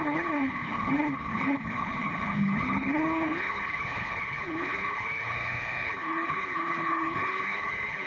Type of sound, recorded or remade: remade